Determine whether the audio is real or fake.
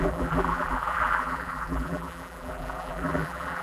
fake